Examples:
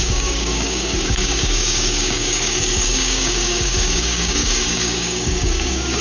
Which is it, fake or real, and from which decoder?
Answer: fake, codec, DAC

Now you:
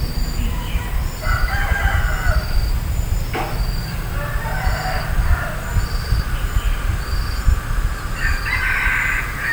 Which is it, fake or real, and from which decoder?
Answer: real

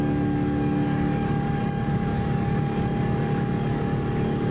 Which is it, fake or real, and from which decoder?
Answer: fake, codec, DAC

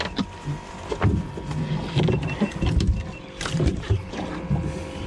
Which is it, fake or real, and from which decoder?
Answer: real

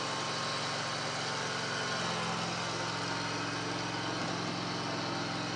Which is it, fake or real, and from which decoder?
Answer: real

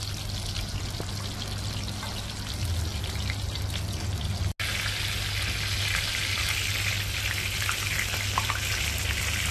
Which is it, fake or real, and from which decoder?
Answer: real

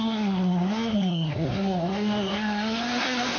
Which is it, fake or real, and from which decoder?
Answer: fake, codec, SNAC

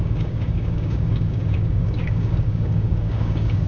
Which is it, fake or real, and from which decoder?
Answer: fake, codec, DAC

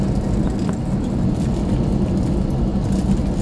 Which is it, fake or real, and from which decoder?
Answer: real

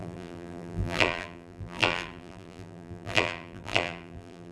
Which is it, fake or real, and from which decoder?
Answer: fake, vocoder, BigVGAN v2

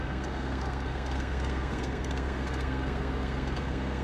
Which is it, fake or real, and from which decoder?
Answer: fake, codec, SNAC